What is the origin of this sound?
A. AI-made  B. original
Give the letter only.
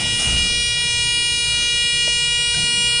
B